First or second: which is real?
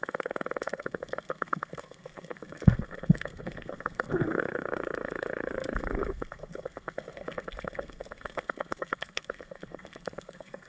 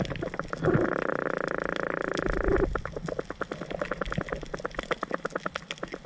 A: second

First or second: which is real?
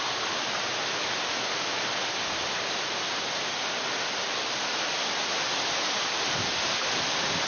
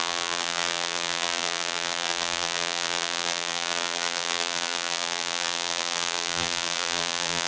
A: first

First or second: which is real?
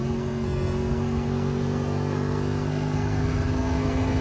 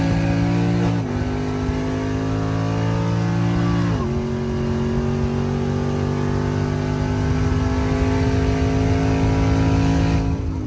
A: second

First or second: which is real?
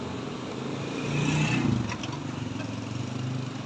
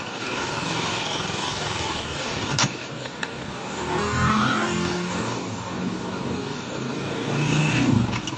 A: first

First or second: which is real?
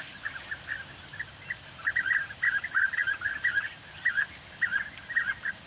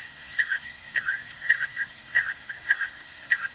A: first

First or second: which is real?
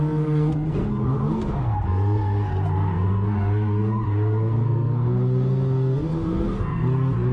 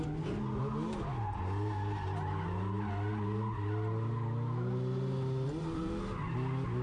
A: second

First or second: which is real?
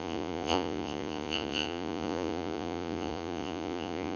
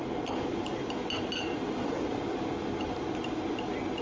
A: second